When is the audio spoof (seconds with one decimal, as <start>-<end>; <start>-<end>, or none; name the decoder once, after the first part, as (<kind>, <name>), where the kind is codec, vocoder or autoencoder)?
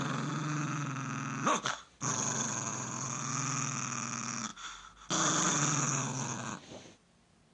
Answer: 2.7-3.3 (vocoder, BigVGAN v2)